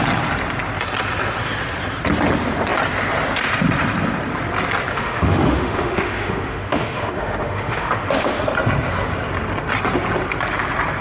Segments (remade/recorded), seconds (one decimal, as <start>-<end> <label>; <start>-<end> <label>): 0.0-4.9 recorded; 4.9-8.4 remade; 8.4-11.0 recorded